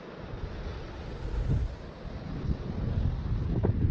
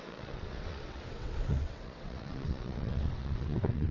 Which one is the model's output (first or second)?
second